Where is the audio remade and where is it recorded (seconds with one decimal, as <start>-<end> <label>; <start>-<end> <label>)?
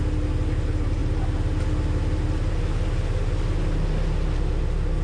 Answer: 0.0-5.0 recorded